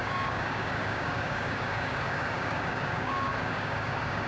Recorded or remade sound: remade